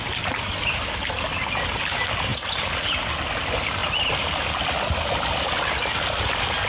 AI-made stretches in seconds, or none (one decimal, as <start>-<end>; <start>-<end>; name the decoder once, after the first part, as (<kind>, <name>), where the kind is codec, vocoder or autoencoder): none